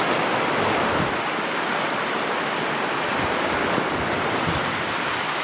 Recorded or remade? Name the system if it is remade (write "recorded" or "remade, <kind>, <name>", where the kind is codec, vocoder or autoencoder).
recorded